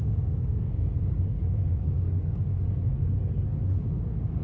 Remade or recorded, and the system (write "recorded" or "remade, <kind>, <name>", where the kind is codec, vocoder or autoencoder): remade, codec, SNAC